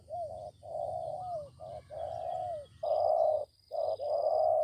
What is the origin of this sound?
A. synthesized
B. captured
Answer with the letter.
B